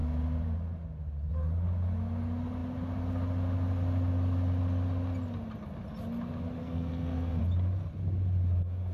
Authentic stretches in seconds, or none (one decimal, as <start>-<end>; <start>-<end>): 0.0-6.6; 7.4-8.9